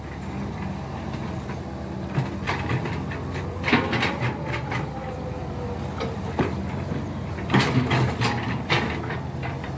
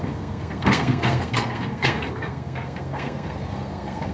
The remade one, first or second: second